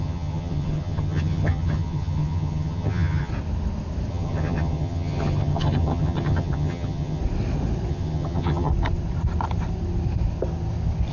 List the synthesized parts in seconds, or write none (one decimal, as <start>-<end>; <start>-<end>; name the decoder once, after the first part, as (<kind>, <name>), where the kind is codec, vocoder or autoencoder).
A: 0.0-3.3 (vocoder, HiFi-GAN); 4.1-7.2; 7.9-8.7